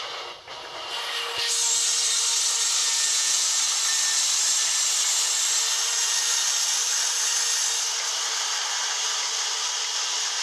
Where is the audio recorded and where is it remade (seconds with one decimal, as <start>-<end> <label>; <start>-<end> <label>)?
0.0-2.8 recorded; 2.8-3.6 remade; 3.6-10.4 recorded